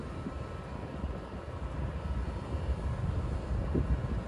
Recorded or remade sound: recorded